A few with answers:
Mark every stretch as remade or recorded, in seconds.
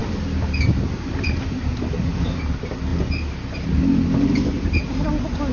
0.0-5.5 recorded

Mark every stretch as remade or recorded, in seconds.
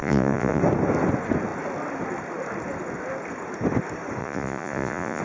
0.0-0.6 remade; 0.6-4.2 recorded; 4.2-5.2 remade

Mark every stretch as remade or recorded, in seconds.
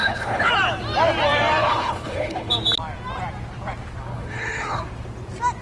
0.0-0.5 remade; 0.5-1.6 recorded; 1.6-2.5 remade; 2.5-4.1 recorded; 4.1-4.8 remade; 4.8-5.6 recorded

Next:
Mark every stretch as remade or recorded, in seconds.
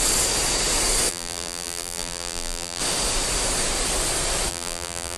0.0-1.1 recorded; 1.1-2.8 remade; 2.8-4.5 recorded; 4.5-5.2 remade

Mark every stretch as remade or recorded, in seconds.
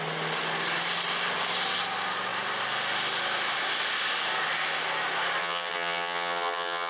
0.0-5.4 recorded; 5.4-6.9 remade